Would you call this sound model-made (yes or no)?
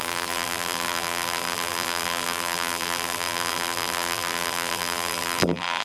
yes